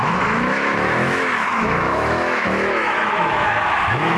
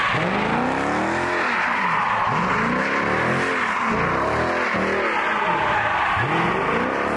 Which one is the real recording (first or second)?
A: second